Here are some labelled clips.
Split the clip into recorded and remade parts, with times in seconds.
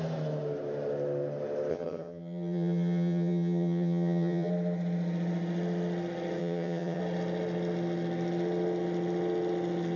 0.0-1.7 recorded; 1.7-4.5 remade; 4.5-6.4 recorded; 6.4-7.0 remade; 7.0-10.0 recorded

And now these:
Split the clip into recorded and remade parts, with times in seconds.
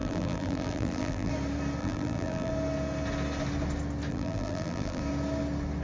0.0-1.3 remade; 1.3-1.8 recorded; 1.8-2.5 remade; 2.5-4.1 recorded; 4.1-5.0 remade; 5.0-5.8 recorded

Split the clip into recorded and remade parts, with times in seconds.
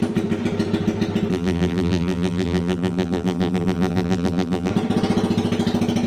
0.0-1.3 recorded; 1.3-4.7 remade; 4.7-6.1 recorded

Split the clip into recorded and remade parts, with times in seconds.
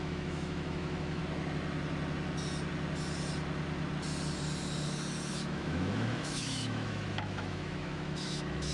0.0-1.2 remade; 1.2-5.3 recorded; 5.3-8.7 remade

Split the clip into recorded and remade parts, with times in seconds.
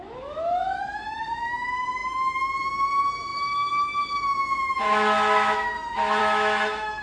0.0-7.0 remade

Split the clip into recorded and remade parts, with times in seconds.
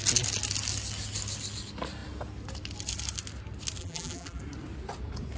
0.0-3.8 recorded; 3.8-4.4 remade; 4.4-5.4 recorded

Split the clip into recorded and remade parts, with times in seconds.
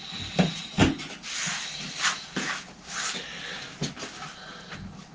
0.0-5.1 recorded